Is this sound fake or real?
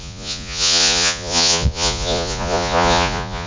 fake